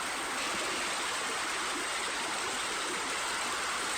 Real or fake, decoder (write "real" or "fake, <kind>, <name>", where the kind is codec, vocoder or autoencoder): real